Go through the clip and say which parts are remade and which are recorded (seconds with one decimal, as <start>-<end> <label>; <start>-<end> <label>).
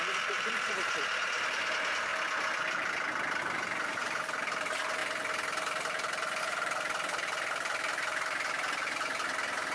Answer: 0.0-2.1 remade; 2.1-3.4 recorded; 3.4-5.0 remade; 5.0-6.4 recorded; 6.4-9.7 remade